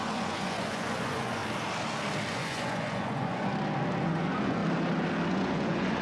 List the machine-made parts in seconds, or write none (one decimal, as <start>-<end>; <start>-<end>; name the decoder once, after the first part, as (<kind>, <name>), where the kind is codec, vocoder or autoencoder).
0.0-1.4 (vocoder, Vocos); 2.3-3.5; 4.0-4.6; 5.3-6.0